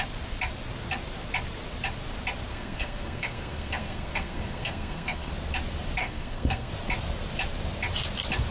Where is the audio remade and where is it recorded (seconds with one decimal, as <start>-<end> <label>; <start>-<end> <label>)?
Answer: 0.0-2.5 recorded; 2.5-5.3 remade; 5.3-6.0 recorded; 6.0-6.7 remade; 6.7-8.5 recorded